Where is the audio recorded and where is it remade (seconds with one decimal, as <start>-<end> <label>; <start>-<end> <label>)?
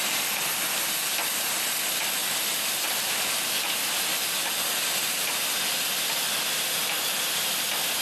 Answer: 0.0-8.0 recorded